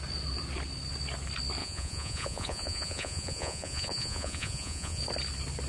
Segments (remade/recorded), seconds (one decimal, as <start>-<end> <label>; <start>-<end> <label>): 0.0-1.6 recorded; 1.6-5.0 remade; 5.0-5.7 recorded